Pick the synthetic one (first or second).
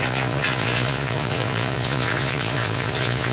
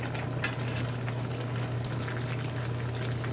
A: first